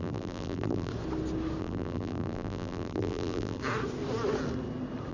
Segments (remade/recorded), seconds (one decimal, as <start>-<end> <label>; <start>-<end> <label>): 0.0-0.9 remade; 0.9-1.6 recorded; 1.6-3.6 remade; 3.6-5.1 recorded